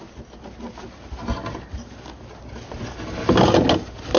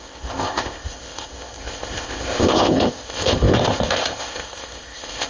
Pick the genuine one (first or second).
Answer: first